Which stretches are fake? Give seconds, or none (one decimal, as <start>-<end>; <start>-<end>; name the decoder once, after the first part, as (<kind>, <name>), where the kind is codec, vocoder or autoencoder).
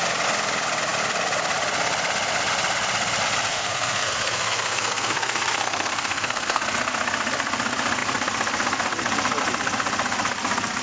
3.5-6.6 (codec, SNAC)